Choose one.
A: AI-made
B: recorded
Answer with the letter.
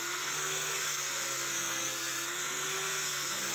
A